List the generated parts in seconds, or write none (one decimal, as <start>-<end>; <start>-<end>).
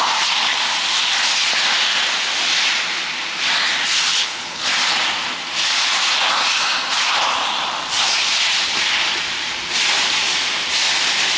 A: 4.1-4.7